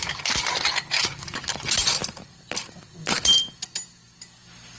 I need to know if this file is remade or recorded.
recorded